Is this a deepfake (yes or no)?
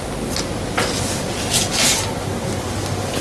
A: no